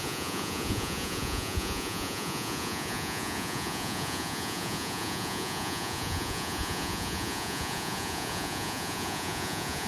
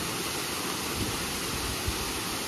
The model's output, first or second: first